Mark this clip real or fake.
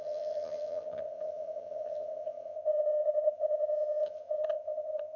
fake